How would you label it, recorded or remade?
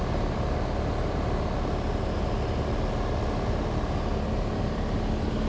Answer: recorded